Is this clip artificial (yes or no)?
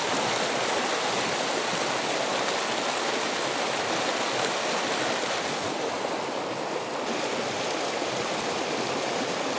no